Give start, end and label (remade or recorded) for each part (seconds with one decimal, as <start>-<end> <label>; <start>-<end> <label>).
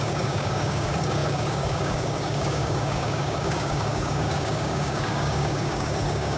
0.0-6.4 remade